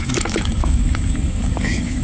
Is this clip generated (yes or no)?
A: yes